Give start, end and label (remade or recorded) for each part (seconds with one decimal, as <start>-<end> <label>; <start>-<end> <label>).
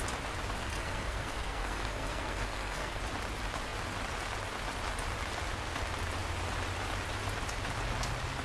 0.0-0.6 recorded; 0.6-3.0 remade; 3.0-8.4 recorded